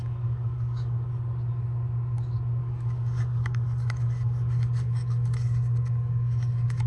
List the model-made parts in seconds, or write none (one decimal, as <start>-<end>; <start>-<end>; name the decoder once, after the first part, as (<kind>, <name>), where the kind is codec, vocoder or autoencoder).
0.0-1.1 (codec, DAC); 2.6-6.9